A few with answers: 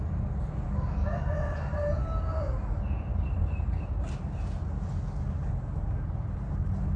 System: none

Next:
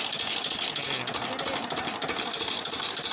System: none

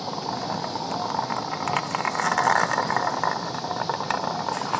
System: none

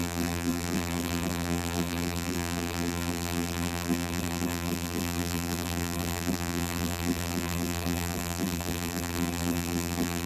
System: vocoder, BigVGAN v2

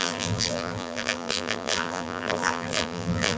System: vocoder, BigVGAN v2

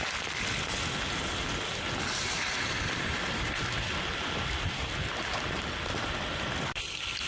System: vocoder, BigVGAN v2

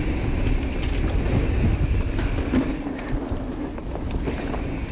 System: none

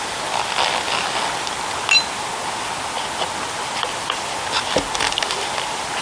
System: none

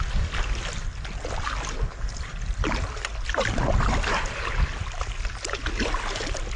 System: none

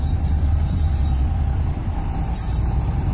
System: vocoder, BigVGAN v2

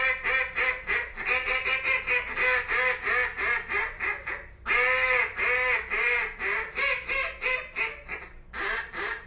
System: none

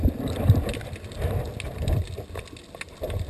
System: none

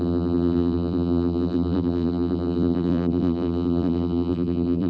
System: vocoder, BigVGAN v2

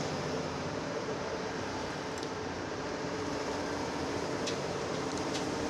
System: vocoder, BigVGAN v2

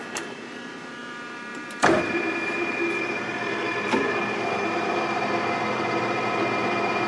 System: vocoder, BigVGAN v2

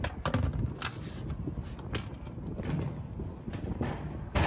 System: none